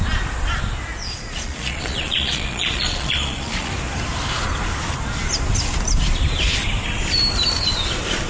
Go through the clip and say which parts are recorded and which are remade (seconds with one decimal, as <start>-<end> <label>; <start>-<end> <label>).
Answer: 0.0-1.0 recorded; 1.0-3.7 remade; 3.7-8.3 recorded